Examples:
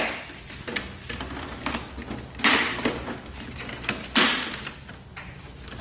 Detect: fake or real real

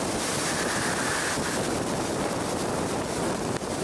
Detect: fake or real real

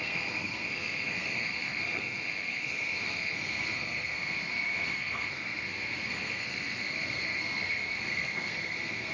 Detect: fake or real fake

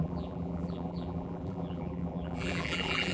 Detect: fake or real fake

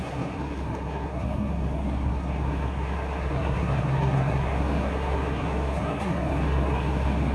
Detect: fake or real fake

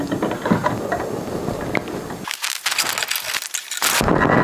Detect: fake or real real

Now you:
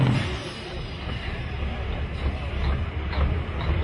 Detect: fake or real real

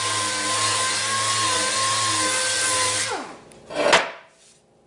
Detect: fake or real real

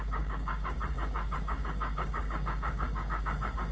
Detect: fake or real fake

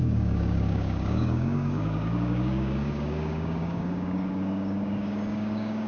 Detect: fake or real fake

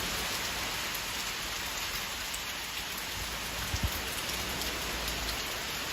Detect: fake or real real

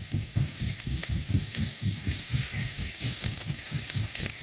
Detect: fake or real fake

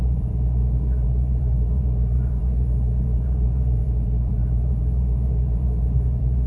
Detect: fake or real fake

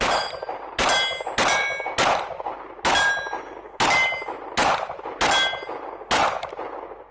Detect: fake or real real